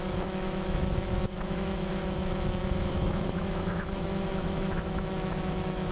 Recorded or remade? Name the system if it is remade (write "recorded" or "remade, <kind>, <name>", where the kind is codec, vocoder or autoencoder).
remade, autoencoder, DAC-VAE